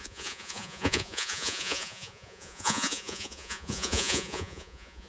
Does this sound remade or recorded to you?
remade